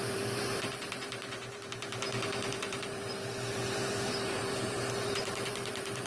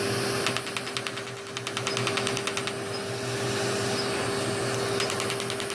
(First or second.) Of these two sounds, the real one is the second